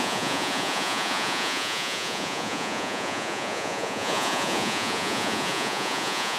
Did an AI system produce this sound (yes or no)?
yes